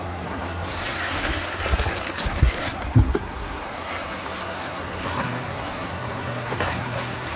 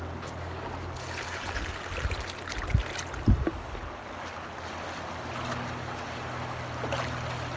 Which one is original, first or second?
second